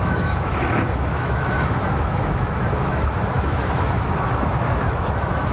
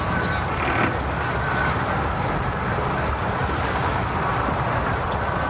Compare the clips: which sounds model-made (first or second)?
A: first